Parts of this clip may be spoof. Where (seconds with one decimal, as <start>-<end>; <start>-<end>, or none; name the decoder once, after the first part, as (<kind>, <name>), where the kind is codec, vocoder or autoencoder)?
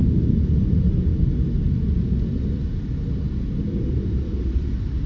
none